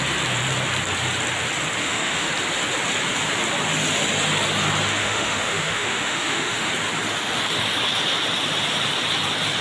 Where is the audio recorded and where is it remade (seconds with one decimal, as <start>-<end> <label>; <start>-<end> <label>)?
0.0-1.8 recorded; 1.8-2.3 remade; 2.3-5.0 recorded; 5.0-6.7 remade; 6.7-9.6 recorded